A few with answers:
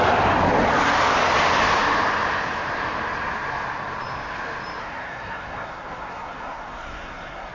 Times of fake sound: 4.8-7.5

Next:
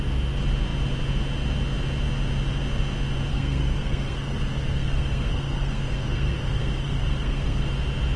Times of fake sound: 3.3-7.7

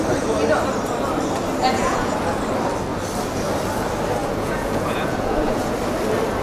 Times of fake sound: 1.6-2.4; 4.2-5.7

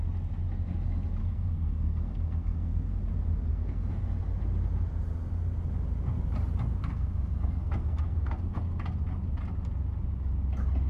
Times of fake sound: 1.2-3.0; 3.5-4.0; 6.8-8.6

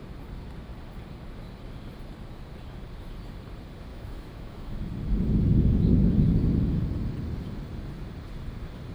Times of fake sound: 3.9-4.9

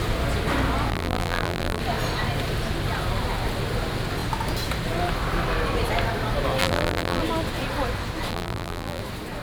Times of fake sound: 0.9-1.8; 6.6-7.2; 8.3-9.0

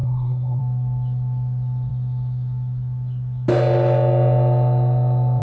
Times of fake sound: 0.0-0.6